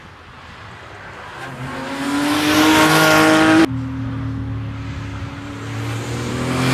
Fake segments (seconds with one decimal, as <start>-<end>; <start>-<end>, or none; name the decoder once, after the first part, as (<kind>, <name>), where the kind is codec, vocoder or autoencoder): none